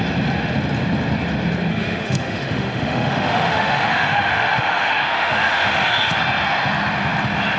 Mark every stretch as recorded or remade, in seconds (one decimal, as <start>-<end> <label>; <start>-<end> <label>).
0.0-1.7 recorded; 1.7-6.2 remade; 6.2-7.6 recorded